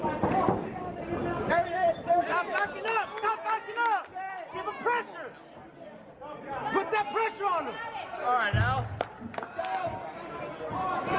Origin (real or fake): real